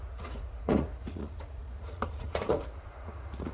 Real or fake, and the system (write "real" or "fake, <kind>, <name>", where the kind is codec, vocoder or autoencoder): fake, vocoder, Vocos